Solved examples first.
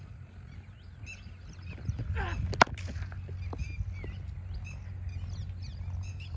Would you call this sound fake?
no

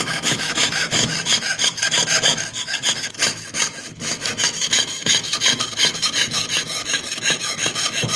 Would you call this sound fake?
yes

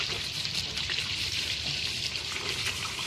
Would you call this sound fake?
no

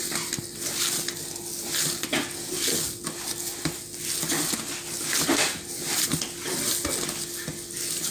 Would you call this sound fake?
no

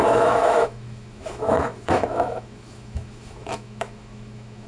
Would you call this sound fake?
yes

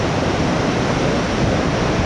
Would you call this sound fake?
no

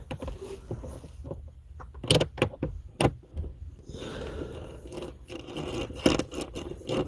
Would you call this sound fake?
no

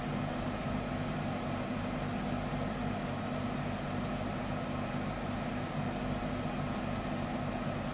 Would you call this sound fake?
no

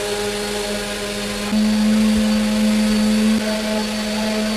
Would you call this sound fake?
no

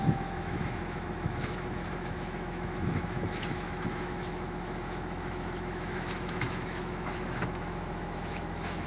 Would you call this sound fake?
yes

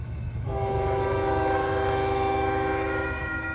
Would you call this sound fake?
yes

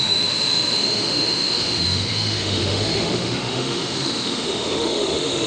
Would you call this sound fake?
yes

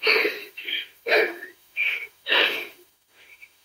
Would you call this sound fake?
yes